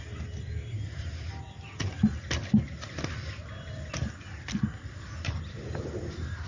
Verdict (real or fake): real